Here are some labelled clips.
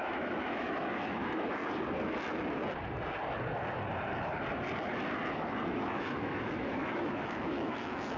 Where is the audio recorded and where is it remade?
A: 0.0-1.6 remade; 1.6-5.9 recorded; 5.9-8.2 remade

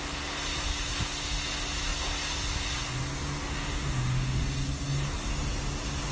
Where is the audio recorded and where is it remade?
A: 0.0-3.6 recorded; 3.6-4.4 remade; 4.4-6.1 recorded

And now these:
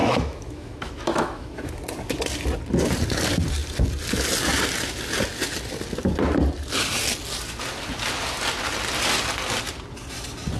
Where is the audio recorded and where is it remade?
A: 0.0-1.7 remade; 1.7-10.6 recorded